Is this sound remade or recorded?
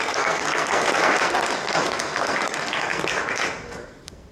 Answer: remade